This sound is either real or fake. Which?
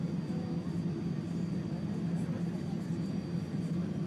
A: real